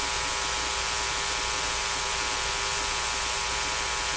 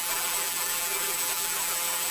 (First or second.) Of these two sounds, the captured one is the first